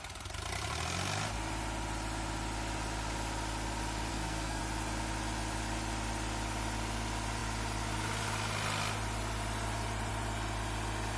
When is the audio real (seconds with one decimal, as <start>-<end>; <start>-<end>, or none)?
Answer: 0.0-4.1; 4.6-11.2